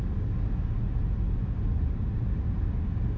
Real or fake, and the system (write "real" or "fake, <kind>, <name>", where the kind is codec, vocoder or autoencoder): real